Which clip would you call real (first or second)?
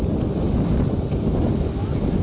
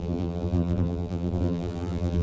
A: first